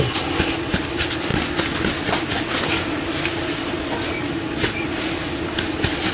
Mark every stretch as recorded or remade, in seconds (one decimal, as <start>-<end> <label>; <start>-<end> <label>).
0.0-6.1 recorded